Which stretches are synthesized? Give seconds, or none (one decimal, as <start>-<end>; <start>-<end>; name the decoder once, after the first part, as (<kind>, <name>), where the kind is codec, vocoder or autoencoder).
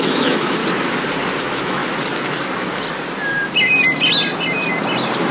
0.0-0.6 (autoencoder, DAC-VAE); 1.4-1.8